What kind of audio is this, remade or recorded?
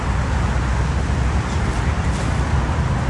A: recorded